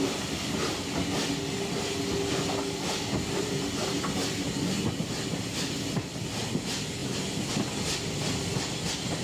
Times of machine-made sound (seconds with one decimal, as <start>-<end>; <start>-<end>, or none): none